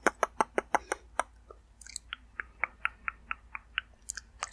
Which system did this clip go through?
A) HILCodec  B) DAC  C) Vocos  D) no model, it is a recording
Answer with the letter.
D